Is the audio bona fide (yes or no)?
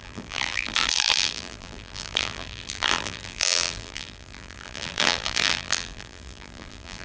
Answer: no